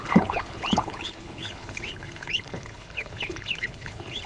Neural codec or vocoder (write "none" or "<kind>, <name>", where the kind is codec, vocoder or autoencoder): codec, HILCodec